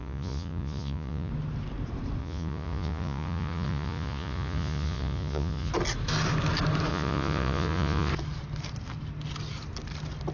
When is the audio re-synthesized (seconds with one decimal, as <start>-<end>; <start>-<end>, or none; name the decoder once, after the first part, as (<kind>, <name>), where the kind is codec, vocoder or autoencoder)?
0.0-1.3 (vocoder, Vocos); 2.2-5.7; 6.9-8.1